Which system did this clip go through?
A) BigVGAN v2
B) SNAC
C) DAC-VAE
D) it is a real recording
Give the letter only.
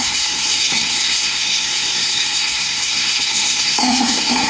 B